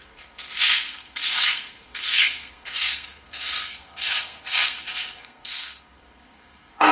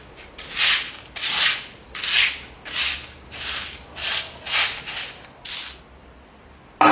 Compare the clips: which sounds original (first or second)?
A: second